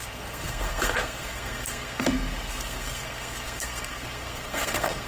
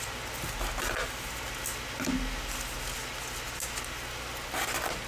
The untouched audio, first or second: second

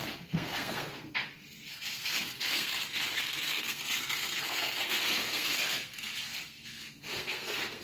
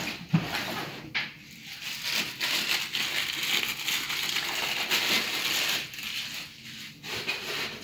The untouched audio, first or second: second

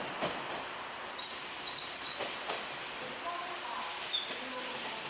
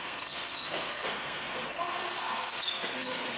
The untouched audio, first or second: first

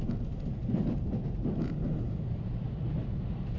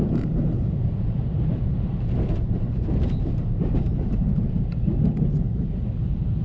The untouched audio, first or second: first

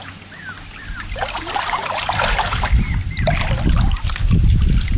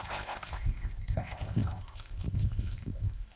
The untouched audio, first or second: first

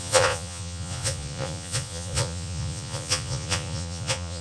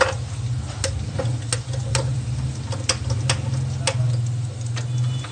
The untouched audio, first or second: second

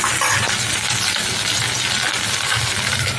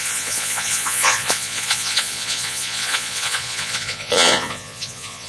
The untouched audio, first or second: first